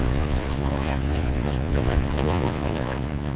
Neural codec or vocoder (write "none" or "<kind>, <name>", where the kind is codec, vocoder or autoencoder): vocoder, Vocos